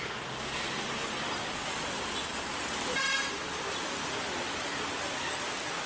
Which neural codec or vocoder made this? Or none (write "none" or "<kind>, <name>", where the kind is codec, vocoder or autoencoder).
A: none